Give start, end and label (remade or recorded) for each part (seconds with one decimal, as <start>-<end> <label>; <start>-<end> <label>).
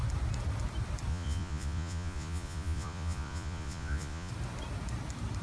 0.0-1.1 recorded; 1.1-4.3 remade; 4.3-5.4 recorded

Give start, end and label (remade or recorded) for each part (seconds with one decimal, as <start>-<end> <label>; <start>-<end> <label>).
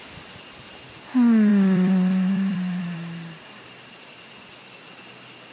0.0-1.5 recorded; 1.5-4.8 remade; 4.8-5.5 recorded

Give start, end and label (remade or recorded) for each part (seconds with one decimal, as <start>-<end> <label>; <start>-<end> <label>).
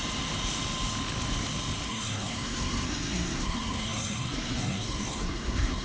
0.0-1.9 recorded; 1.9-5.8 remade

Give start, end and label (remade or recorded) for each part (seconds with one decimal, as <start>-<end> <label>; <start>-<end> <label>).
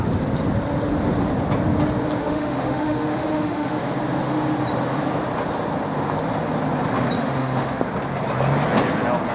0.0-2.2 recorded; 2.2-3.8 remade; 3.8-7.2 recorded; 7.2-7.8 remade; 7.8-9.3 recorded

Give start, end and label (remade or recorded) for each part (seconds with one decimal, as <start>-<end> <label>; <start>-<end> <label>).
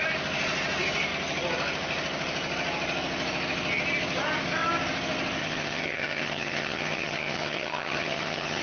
0.0-5.4 recorded; 5.4-8.6 remade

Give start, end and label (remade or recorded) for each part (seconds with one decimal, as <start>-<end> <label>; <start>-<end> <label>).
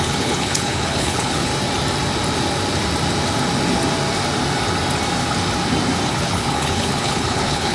0.0-1.5 remade; 1.5-6.1 recorded; 6.1-7.7 remade